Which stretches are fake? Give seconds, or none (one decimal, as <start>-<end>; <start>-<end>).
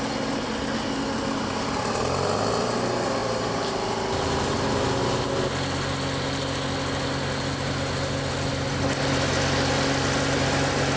none